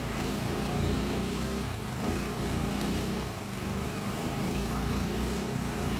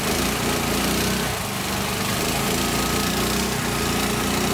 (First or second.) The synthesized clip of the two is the first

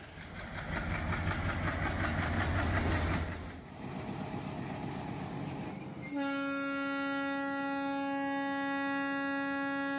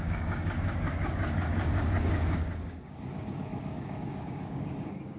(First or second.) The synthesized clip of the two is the second